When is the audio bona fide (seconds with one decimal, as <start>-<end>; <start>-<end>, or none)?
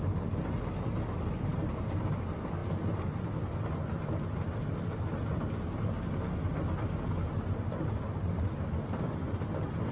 0.0-9.9